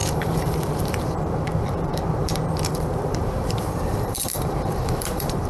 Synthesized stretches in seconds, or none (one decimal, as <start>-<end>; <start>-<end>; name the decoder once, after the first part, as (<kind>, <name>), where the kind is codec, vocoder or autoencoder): 0.0-5.5 (vocoder, BigVGAN v2)

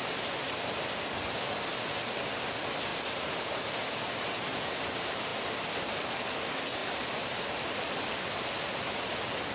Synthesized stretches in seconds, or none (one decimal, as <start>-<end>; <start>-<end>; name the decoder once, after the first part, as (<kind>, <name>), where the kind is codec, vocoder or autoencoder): 2.9-3.6 (vocoder, BigVGAN v2); 5.3-6.2

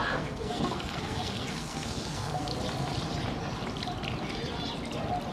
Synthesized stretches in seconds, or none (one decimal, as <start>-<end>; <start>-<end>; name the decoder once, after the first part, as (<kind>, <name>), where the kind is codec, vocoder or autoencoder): 0.0-2.5 (codec, SNAC)

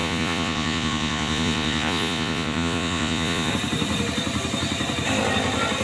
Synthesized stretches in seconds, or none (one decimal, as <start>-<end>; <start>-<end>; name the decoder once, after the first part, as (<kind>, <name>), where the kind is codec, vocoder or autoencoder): 0.0-3.5 (vocoder, Vocos)

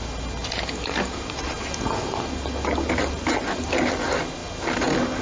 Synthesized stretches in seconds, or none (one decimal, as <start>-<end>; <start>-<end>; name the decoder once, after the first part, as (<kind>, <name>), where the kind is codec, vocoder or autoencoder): none